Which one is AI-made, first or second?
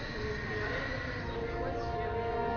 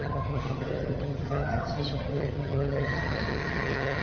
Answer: second